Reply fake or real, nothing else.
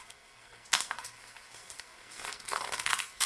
fake